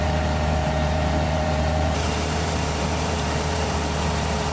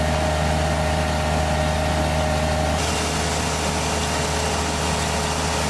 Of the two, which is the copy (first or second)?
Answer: first